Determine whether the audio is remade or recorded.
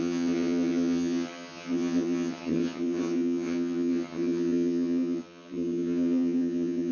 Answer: remade